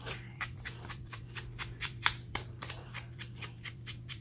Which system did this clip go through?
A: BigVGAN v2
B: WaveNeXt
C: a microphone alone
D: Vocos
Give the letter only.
A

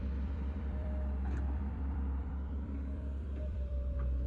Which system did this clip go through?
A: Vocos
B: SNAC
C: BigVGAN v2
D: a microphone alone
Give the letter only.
C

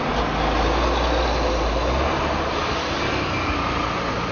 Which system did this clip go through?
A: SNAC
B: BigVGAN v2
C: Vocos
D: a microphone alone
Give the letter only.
D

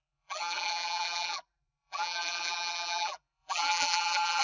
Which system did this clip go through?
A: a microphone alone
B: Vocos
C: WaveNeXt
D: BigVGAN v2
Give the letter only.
D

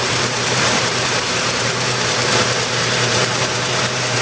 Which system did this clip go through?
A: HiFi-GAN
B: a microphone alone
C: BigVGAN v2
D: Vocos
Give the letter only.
C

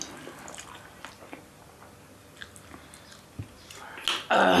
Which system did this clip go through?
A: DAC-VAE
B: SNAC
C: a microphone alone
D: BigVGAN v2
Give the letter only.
C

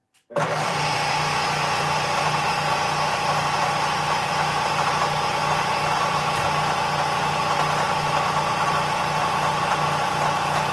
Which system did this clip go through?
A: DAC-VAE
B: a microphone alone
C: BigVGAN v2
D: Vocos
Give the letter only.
B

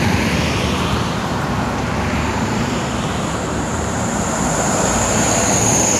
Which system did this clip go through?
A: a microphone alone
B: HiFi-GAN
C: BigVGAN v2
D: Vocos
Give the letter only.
C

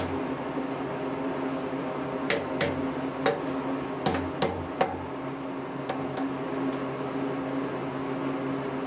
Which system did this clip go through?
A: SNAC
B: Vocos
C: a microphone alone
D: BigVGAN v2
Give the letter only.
C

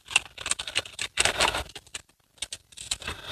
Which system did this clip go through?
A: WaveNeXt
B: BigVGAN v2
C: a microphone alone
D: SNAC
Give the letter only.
B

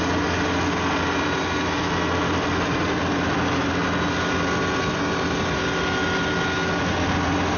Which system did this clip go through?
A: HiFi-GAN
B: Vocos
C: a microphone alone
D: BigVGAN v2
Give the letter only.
C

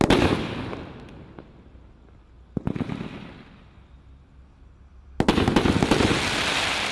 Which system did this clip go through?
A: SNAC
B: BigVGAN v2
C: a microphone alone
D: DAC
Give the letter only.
C